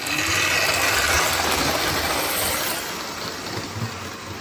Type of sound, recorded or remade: recorded